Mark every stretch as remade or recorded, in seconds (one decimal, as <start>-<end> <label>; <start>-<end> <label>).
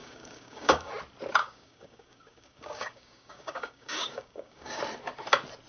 0.0-0.9 remade; 0.9-1.4 recorded; 1.4-4.8 remade; 4.8-5.7 recorded